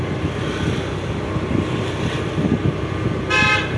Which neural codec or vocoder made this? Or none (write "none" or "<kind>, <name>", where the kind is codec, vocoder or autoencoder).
none